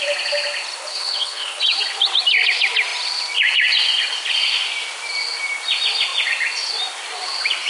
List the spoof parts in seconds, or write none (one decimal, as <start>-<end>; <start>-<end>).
0.9-1.6